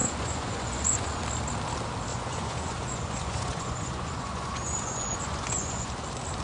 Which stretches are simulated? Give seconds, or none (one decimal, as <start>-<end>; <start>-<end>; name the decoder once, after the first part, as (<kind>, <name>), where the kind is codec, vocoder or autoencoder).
0.0-1.2 (vocoder, Vocos); 2.1-5.9